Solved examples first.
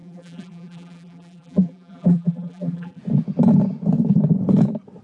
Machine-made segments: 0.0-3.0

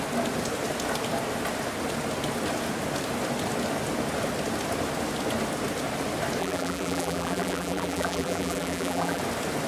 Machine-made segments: 6.4-9.2